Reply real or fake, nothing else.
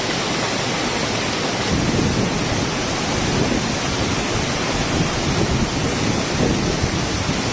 real